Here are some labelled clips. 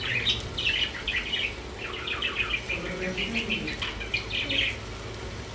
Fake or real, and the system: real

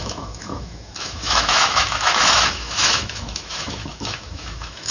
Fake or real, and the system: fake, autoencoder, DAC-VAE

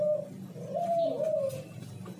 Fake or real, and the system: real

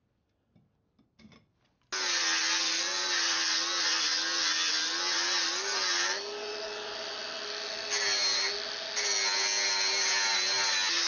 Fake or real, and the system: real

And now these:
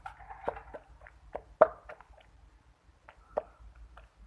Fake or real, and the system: real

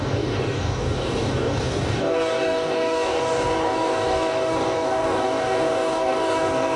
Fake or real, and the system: fake, codec, DAC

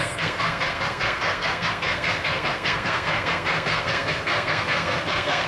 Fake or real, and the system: fake, codec, SNAC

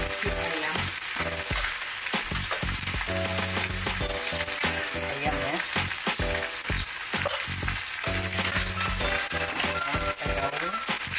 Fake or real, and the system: real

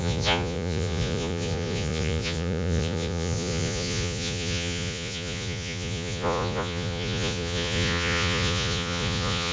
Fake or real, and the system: fake, vocoder, Vocos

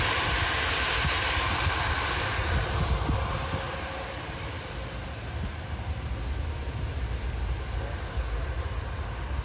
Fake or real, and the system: real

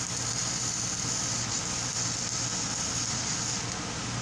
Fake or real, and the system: real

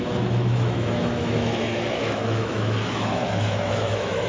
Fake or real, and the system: fake, autoencoder, DAC-VAE